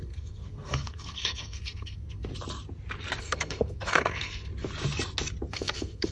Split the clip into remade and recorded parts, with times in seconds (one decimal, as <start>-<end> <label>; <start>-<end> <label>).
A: 0.0-2.3 remade; 2.3-3.2 recorded; 3.2-4.5 remade; 4.5-5.5 recorded; 5.5-6.1 remade